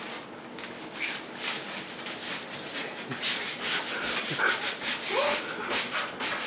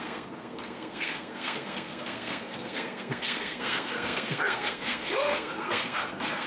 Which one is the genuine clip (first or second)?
first